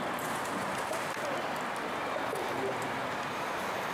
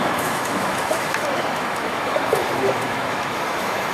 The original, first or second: first